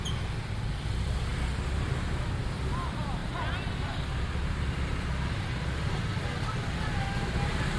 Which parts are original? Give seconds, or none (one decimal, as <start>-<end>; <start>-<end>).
0.0-7.8